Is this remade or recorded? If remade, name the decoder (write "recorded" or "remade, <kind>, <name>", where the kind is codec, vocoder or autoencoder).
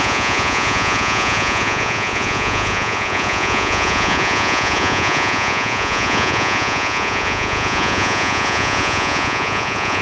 remade, vocoder, Vocos